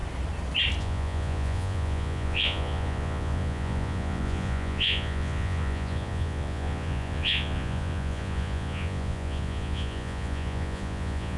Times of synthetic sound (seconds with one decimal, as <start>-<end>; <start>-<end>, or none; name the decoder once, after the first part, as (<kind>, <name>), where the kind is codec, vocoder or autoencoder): 0.8-11.4 (vocoder, Vocos)